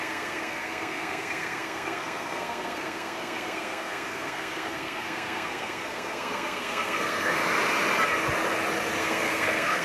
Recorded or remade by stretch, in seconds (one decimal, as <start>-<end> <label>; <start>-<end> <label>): 0.0-7.4 remade; 7.4-9.0 recorded; 9.0-9.8 remade